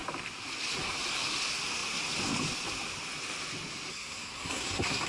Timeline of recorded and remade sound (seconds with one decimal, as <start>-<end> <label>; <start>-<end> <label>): 0.0-3.9 recorded; 3.9-5.1 remade

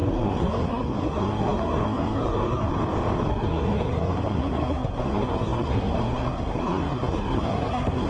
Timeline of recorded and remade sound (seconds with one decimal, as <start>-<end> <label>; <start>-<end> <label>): 0.0-2.8 remade; 2.8-3.3 recorded; 3.3-8.1 remade

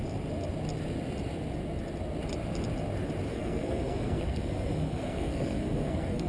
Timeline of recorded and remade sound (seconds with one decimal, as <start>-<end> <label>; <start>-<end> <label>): 0.0-3.3 recorded; 3.3-6.3 remade

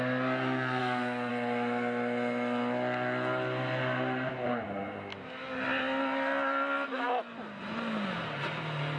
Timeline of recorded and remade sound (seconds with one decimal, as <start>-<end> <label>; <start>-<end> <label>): 0.0-0.8 recorded; 0.8-1.3 remade; 1.3-9.0 recorded

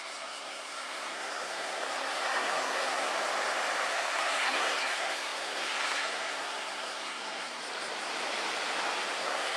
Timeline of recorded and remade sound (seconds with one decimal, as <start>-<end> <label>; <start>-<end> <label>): 0.0-3.1 remade; 3.1-3.9 recorded; 3.9-7.6 remade; 7.6-9.2 recorded; 9.2-9.6 remade

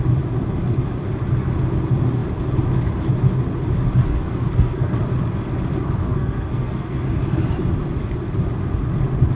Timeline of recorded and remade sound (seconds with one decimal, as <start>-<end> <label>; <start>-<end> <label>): 0.0-4.1 recorded; 4.1-5.0 remade; 5.0-6.0 recorded; 6.0-7.0 remade; 7.0-9.3 recorded

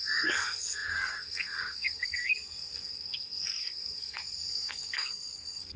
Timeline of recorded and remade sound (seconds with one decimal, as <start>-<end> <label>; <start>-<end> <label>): 0.0-5.8 remade